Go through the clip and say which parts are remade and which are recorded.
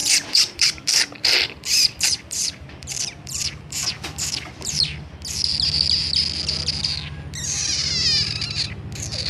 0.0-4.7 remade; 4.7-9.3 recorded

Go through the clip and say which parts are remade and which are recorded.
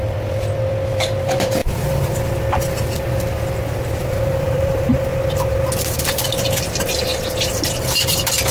0.0-1.6 remade; 1.6-3.7 recorded; 3.7-5.1 remade; 5.1-5.8 recorded; 5.8-7.1 remade; 7.1-7.7 recorded; 7.7-8.5 remade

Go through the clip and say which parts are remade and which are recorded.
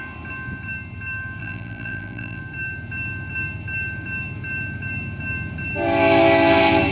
0.0-1.4 recorded; 1.4-2.4 remade; 2.4-6.9 recorded